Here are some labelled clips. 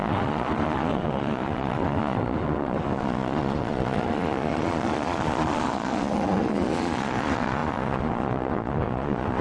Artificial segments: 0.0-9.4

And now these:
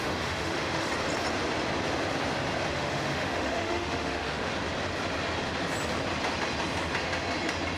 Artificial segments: 0.0-0.9; 2.7-4.5

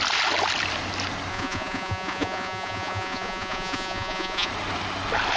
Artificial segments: 1.3-4.5

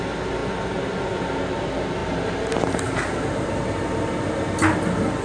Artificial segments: none

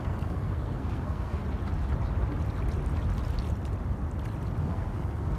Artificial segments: 0.0-1.4; 4.6-5.4